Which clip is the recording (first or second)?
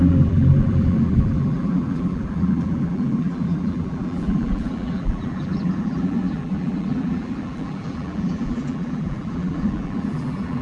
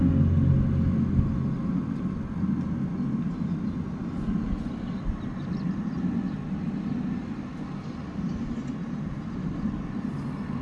second